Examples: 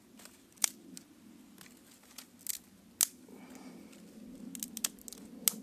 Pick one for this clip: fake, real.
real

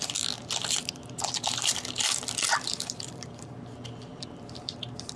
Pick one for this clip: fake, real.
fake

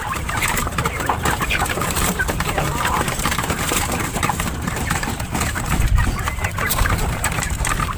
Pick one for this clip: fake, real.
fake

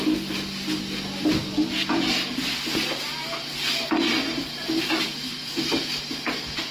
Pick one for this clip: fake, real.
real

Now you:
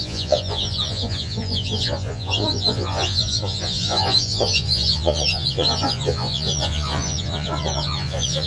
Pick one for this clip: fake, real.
fake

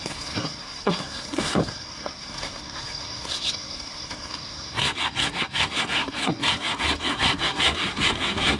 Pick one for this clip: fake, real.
fake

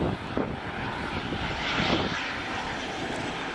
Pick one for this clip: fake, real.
real